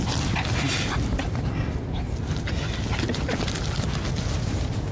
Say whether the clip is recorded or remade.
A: recorded